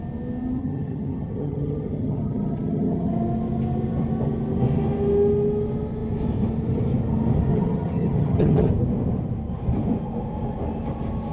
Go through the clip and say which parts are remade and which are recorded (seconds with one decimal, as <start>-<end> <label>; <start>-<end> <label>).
0.0-0.6 recorded; 0.6-3.1 remade; 3.1-7.5 recorded; 7.5-8.7 remade; 8.7-11.3 recorded